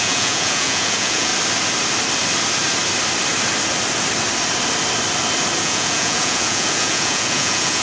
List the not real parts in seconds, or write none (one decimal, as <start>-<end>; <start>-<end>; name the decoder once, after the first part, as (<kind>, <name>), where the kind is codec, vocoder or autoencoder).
0.0-1.3 (vocoder, Vocos); 5.6-7.8